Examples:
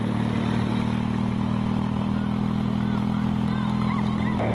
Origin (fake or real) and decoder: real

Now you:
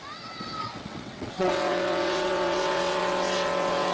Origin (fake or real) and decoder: fake, vocoder, WaveNeXt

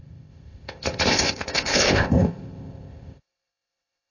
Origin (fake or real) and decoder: fake, codec, ZipCodec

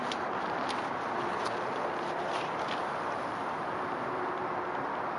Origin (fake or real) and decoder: real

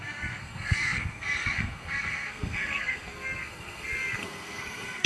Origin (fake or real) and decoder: fake, codec, SNAC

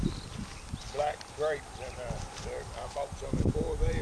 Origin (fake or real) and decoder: real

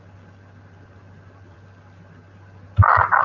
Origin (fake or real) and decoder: real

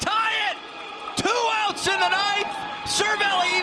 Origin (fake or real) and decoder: real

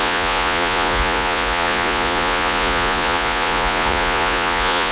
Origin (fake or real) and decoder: fake, vocoder, Vocos